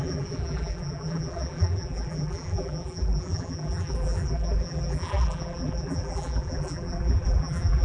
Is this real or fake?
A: fake